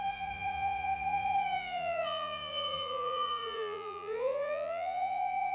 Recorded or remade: remade